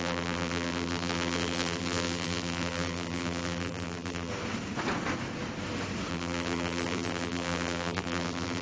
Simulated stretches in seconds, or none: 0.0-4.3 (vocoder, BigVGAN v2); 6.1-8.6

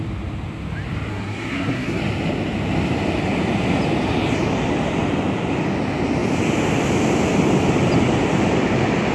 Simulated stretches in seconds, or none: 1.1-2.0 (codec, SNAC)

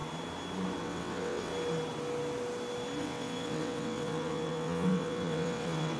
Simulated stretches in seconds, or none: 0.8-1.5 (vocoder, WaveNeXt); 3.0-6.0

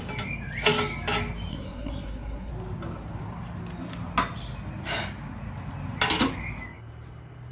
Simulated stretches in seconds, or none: 1.5-2.5 (codec, SNAC)

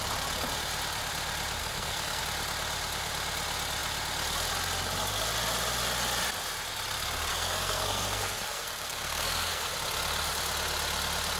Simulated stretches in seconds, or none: 1.6-2.2 (codec, SNAC); 7.3-9.7